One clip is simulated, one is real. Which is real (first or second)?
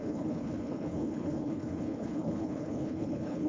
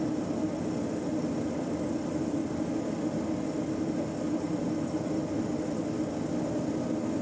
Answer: second